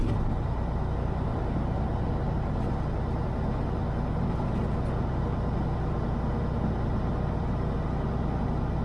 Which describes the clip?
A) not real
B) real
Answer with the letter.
B